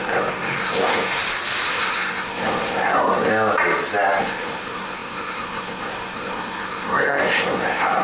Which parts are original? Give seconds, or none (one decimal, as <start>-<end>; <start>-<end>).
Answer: 1.2-1.7; 3.3-4.2